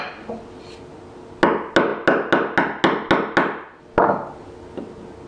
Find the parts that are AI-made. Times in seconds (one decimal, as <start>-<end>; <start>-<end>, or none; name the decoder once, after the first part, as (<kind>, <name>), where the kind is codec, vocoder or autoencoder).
none